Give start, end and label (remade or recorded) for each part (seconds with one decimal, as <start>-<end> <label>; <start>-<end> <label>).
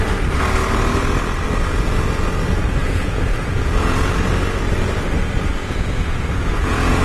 0.0-2.8 recorded; 2.8-4.1 remade; 4.1-5.5 recorded; 5.5-7.0 remade